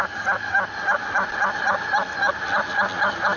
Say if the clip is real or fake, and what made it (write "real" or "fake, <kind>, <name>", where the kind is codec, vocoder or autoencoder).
real